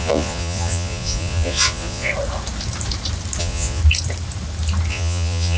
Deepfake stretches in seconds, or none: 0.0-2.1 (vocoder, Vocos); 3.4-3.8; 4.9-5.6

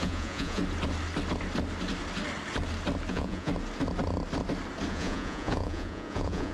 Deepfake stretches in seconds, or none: 0.0-0.6 (vocoder, Vocos); 3.1-3.5; 4.9-6.5

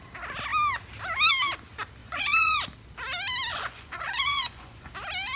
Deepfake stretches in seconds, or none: 2.0-2.6 (vocoder, Vocos); 3.5-4.9